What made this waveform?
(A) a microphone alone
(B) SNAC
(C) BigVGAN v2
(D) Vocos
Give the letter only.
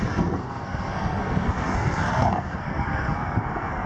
B